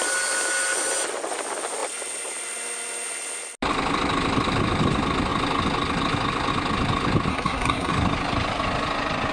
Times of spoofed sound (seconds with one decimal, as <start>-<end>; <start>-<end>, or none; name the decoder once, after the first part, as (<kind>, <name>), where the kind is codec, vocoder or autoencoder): 7.3-7.9 (codec, SNAC)